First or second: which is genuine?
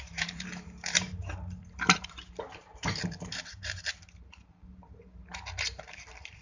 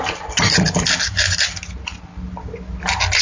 second